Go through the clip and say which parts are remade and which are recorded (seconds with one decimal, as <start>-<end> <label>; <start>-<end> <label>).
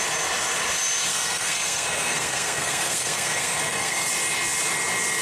0.0-1.1 recorded; 1.1-4.1 remade; 4.1-5.2 recorded